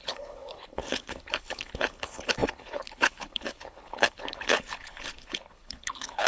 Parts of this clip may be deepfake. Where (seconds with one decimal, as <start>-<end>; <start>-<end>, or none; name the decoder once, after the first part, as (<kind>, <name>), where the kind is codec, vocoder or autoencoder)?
0.0-6.3 (codec, HILCodec)